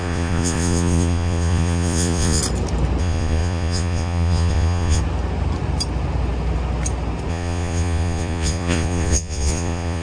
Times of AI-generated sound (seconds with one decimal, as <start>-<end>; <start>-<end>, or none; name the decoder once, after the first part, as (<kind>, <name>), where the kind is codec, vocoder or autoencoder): 0.0-2.4 (vocoder, Vocos); 3.0-5.0; 7.3-10.0